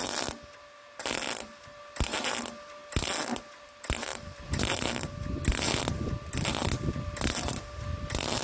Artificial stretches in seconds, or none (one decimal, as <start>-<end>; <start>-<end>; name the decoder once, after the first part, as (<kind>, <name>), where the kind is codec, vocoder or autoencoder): 4.1-5.8 (vocoder, BigVGAN v2)